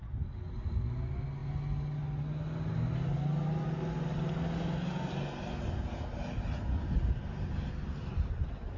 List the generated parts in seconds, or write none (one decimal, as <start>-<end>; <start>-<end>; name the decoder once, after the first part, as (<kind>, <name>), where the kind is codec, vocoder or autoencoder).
none